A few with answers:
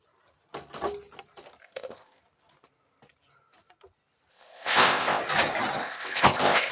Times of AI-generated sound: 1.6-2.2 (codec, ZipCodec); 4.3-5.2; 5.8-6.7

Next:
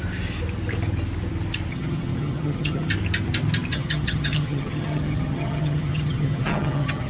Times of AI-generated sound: 1.7-2.9 (vocoder, HiFi-GAN); 3.7-7.1

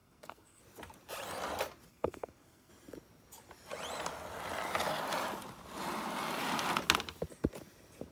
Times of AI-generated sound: 0.0-0.6 (codec, SNAC); 1.9-2.7

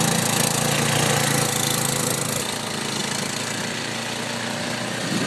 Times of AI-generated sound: none